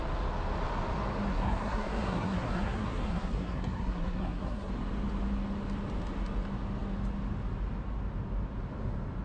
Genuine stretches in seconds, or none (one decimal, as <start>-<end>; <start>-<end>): 0.0-1.3; 4.7-9.2